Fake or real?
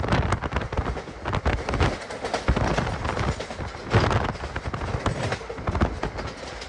real